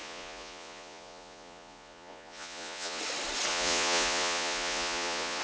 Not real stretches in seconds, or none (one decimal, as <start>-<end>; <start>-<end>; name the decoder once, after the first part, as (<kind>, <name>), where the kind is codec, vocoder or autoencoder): 0.0-3.0 (vocoder, Vocos); 3.5-5.4